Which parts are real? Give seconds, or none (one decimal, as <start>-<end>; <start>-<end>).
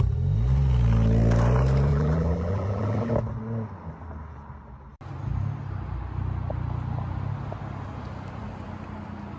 0.0-1.9; 3.1-9.4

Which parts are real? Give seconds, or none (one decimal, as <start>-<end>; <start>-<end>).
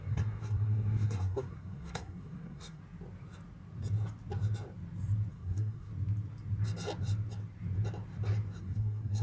2.8-5.3; 5.9-8.6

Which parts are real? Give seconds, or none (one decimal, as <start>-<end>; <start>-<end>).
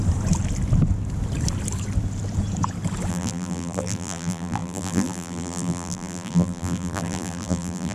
0.0-3.1